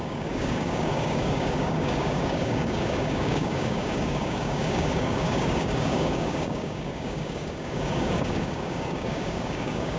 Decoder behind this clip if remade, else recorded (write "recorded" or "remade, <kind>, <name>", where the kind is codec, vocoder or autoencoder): remade, codec, DAC